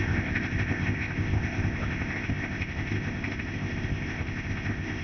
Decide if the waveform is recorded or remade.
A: remade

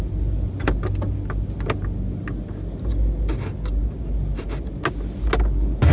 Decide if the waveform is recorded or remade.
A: recorded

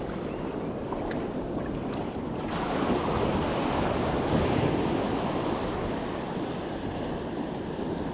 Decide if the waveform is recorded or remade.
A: recorded